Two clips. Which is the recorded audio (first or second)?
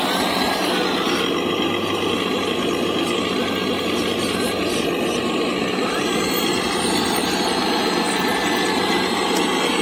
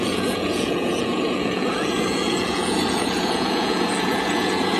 first